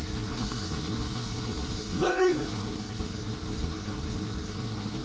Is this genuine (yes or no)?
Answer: no